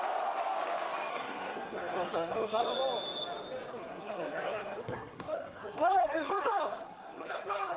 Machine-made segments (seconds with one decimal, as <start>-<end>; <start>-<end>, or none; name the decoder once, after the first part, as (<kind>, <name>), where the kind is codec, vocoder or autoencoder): 1.1-2.7 (codec, SNAC); 3.7-7.8